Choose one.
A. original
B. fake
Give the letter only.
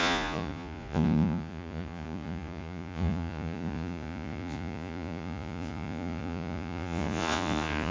B